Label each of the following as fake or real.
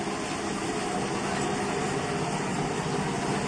real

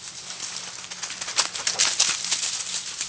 real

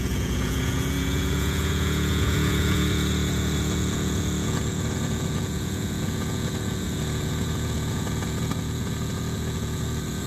fake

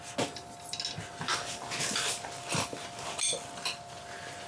real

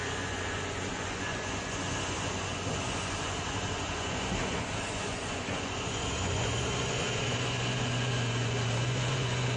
fake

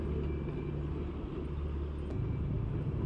real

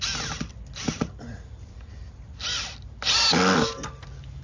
real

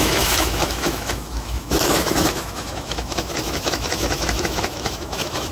fake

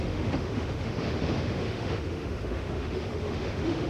fake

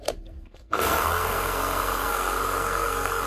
fake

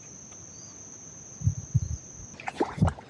real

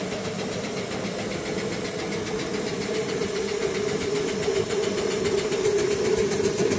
real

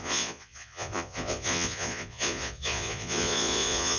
fake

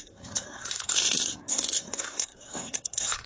fake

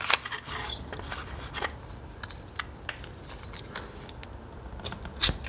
real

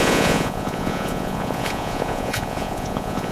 fake